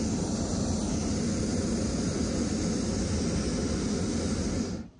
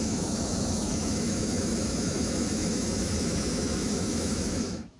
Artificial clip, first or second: second